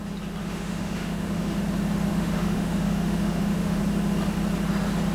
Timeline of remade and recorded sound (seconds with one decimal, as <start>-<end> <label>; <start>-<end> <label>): 0.0-0.4 recorded; 0.4-1.6 remade; 1.6-2.1 recorded; 2.1-3.8 remade; 3.8-5.1 recorded